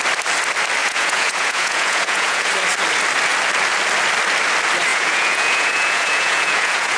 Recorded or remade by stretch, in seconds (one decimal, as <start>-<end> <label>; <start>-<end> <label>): 0.0-0.8 recorded; 0.8-2.5 remade; 2.5-4.9 recorded; 4.9-7.0 remade